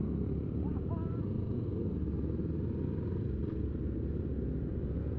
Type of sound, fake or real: real